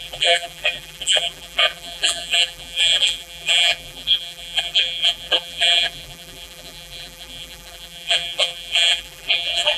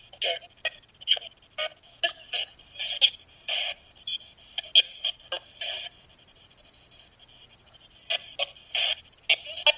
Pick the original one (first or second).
second